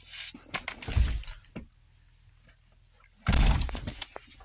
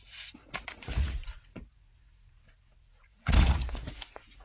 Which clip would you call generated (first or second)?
second